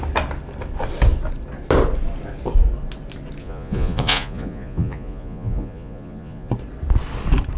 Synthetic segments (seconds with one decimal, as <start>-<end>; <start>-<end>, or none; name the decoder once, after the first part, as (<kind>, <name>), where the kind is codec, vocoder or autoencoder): 3.4-6.5 (vocoder, Vocos)